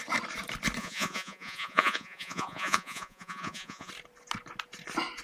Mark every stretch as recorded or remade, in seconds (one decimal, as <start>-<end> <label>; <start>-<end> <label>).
0.0-0.8 recorded; 0.8-3.9 remade; 3.9-5.2 recorded